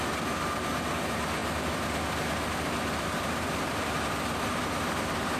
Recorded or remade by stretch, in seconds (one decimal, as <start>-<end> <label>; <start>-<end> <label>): 0.0-5.4 recorded